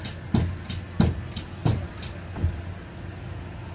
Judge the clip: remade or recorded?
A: recorded